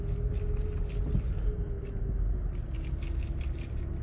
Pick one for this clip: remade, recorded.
recorded